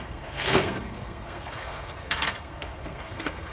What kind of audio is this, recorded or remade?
remade